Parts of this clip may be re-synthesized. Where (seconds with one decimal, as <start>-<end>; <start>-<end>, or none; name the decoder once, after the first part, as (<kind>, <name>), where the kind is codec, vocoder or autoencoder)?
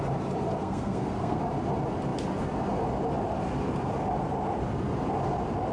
0.6-1.4 (codec, SNAC)